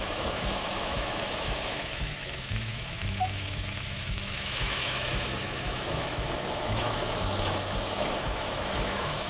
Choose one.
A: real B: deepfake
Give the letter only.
B